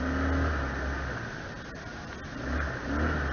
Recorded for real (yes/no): yes